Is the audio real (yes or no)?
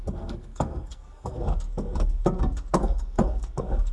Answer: no